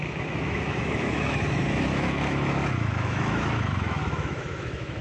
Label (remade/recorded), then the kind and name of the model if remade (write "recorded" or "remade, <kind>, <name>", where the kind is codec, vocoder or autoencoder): remade, autoencoder, DAC-VAE